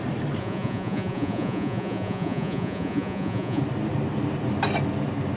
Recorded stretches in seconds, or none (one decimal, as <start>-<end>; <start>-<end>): 0.0-0.4; 3.6-5.4